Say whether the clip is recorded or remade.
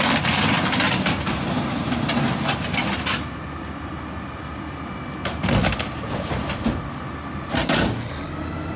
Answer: recorded